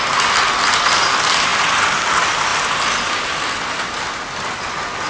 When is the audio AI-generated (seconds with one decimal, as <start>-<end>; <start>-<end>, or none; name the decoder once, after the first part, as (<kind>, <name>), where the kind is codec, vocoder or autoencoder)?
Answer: none